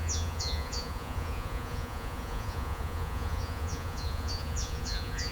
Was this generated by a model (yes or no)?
yes